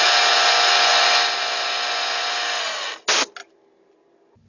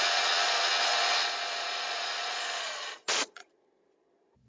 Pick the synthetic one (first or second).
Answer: second